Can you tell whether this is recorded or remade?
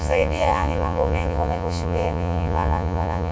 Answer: remade